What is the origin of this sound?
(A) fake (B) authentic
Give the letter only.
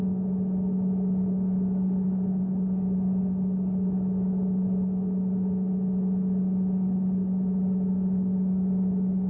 B